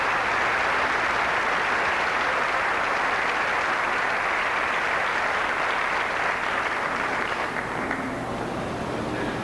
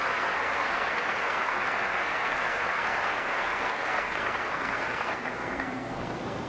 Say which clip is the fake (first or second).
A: second